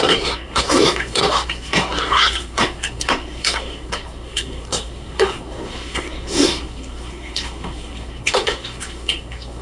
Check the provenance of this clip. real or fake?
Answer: fake